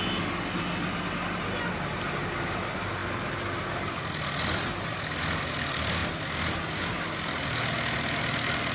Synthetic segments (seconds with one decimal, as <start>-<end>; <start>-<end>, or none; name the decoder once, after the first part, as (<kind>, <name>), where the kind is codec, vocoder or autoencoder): none